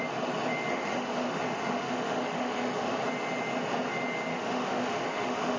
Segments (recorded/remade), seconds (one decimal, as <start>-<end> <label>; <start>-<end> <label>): 0.0-0.7 recorded; 0.7-3.0 remade; 3.0-4.3 recorded; 4.3-5.6 remade